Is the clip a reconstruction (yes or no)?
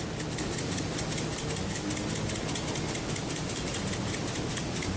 no